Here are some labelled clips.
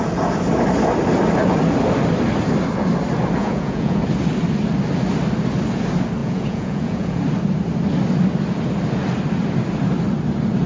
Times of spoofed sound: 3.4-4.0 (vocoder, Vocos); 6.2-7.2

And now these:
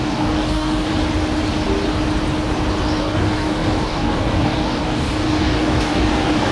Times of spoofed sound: 0.0-0.9 (codec, DAC); 3.0-6.5

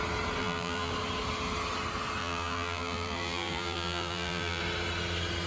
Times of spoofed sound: 0.4-0.9 (vocoder, BigVGAN v2); 2.2-4.6

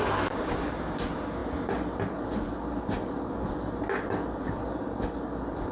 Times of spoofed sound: none

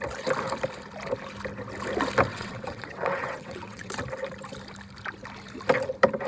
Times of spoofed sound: 2.3-3.9 (vocoder, WaveNeXt)

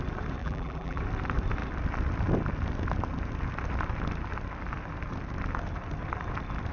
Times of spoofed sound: 0.4-1.0 (vocoder, BigVGAN v2)

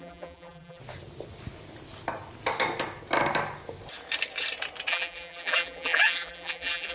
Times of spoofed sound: 0.0-0.8 (vocoder, BigVGAN v2); 4.9-6.9

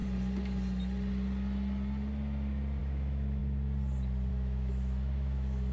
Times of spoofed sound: 2.8-3.4 (autoencoder, DAC-VAE); 4.3-5.7